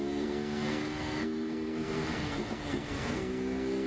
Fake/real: fake